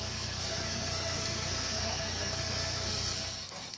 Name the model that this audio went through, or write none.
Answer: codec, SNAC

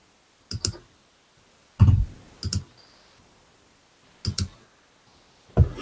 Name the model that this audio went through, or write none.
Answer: none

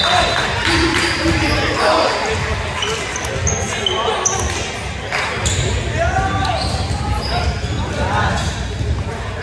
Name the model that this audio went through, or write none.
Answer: none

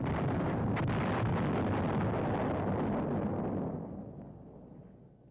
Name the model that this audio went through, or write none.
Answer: none